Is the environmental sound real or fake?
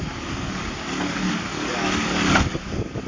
fake